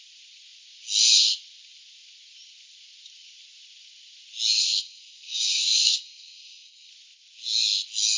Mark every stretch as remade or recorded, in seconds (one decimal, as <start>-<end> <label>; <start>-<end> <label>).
0.0-4.6 recorded; 4.6-6.9 remade; 6.9-8.2 recorded